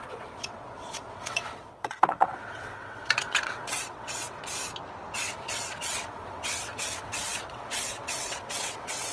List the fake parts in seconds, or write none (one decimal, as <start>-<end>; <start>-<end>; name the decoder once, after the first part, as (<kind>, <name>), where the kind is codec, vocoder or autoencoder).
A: 0.0-4.4 (vocoder, WaveNeXt); 5.2-9.1

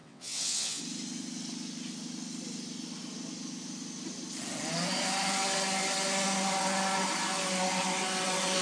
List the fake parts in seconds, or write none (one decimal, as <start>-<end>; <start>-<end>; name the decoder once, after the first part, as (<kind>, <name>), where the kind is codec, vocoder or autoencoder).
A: 0.0-0.8 (vocoder, WaveNeXt)

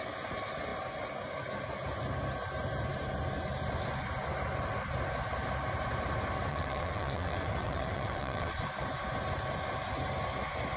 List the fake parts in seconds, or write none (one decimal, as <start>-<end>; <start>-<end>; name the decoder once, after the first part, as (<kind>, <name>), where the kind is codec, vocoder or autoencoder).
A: 6.5-8.6 (vocoder, WaveNeXt)

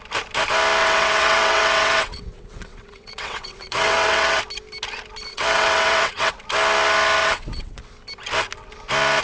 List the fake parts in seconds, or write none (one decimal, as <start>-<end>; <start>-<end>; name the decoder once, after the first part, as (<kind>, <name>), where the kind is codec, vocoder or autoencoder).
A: 0.8-4.4 (vocoder, WaveNeXt); 5.3-6.3; 7.2-7.8